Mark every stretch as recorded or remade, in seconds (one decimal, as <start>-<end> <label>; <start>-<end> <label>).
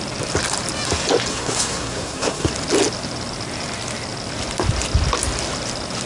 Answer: 0.0-1.3 recorded; 1.3-2.5 remade; 2.5-6.1 recorded